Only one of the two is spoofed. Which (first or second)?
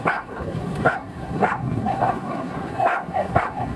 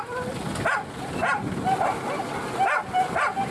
first